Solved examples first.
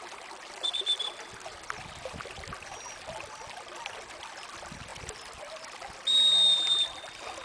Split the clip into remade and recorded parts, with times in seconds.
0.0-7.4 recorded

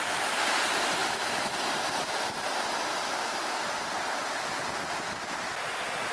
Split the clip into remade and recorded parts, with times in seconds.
0.0-6.1 recorded